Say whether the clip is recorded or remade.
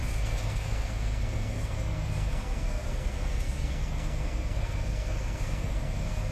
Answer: remade